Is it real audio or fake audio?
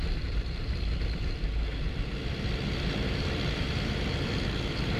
fake